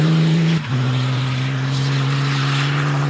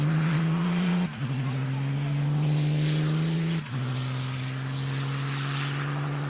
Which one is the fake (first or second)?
first